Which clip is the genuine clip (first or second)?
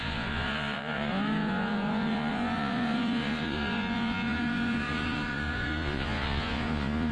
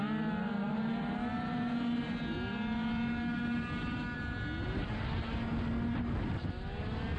second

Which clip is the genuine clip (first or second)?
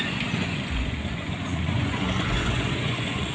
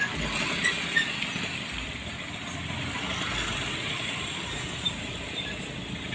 second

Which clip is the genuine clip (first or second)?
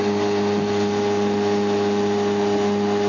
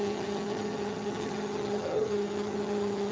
first